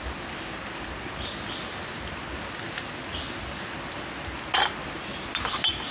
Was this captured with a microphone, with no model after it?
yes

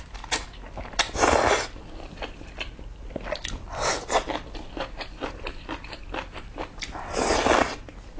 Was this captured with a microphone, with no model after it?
yes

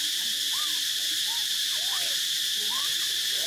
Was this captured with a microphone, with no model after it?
no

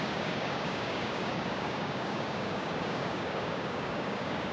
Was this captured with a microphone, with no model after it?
no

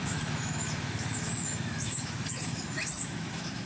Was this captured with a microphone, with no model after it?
no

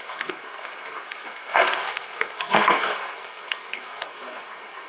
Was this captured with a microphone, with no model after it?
no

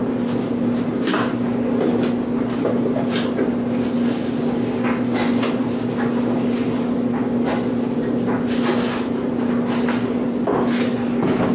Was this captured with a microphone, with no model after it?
yes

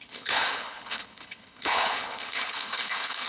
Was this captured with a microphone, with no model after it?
no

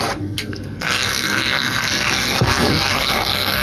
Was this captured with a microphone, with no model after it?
no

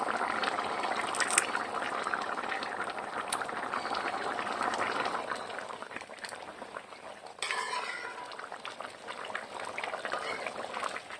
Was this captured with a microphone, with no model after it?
yes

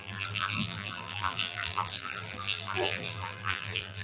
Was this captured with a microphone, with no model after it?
no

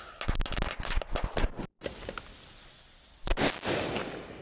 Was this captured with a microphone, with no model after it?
yes